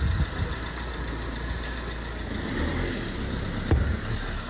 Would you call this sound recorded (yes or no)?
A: yes